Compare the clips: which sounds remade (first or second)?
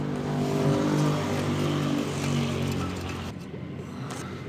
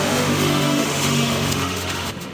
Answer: second